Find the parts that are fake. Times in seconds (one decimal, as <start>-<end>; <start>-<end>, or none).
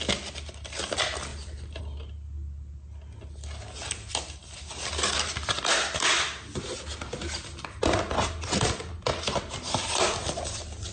1.3-1.8